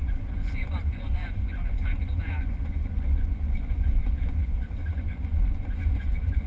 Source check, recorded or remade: remade